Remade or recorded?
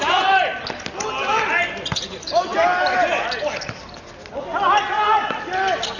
recorded